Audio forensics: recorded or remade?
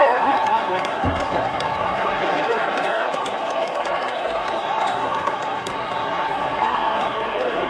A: remade